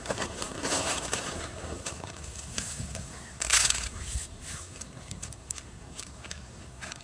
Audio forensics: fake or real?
fake